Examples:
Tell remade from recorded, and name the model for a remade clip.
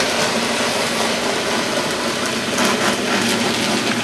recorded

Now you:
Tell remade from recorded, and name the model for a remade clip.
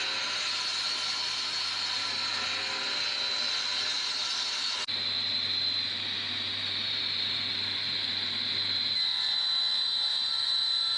recorded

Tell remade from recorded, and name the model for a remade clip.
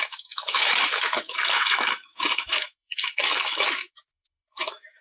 remade, autoencoder, DAC-VAE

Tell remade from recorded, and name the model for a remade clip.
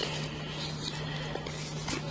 recorded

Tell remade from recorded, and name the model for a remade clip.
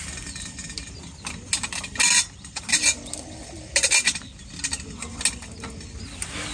recorded